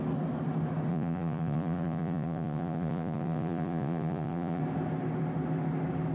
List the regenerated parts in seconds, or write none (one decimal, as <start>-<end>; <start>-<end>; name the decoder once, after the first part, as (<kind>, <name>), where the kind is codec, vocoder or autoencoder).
0.9-4.6 (vocoder, Vocos)